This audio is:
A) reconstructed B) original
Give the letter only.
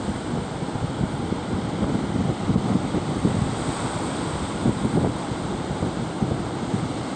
B